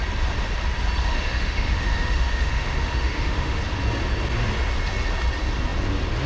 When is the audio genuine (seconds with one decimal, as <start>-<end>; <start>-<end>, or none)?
0.0-1.0; 3.6-6.3